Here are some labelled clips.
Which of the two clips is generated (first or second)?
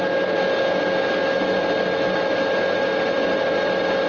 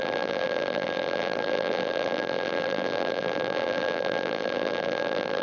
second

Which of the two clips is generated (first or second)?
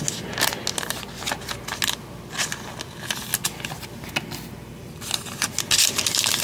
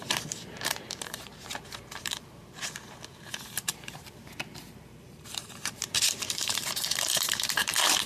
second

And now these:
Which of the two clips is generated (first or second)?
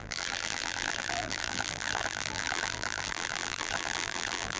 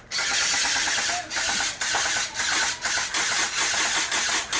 first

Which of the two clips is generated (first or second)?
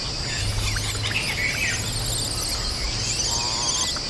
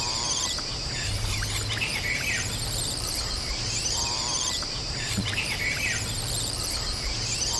second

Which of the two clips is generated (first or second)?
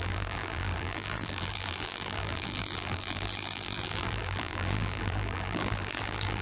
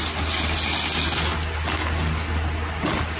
first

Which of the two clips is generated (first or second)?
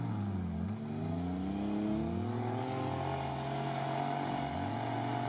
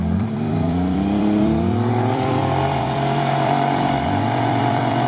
second